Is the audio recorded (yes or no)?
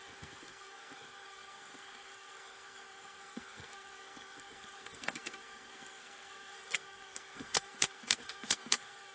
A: no